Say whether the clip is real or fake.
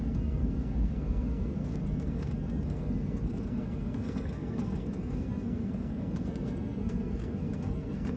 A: fake